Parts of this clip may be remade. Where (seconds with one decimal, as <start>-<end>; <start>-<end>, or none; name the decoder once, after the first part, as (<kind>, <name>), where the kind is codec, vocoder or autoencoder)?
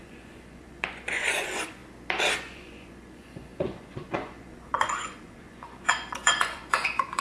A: 0.0-1.8 (vocoder, Vocos); 2.3-7.2